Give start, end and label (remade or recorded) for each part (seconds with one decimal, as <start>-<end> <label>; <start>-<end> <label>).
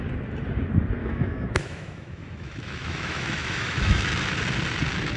0.0-1.0 recorded; 1.0-4.1 remade; 4.1-5.2 recorded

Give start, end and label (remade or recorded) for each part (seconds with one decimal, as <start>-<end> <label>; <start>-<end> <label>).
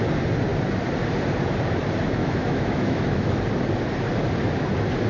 0.0-2.2 recorded; 2.2-3.3 remade; 3.3-5.1 recorded